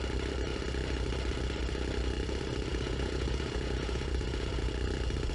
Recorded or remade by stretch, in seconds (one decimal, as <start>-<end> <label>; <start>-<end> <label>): 0.0-2.7 recorded; 2.7-4.7 remade; 4.7-5.3 recorded